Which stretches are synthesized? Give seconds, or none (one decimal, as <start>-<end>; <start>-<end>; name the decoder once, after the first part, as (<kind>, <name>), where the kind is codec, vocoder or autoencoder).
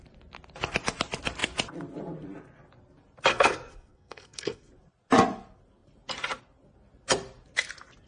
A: 3.3-4.7 (codec, SNAC)